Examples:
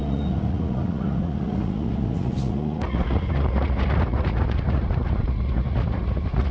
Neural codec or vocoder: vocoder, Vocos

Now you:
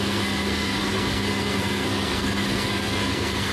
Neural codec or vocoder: codec, SNAC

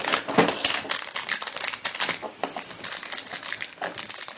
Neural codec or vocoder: none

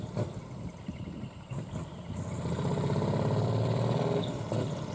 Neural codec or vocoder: vocoder, BigVGAN v2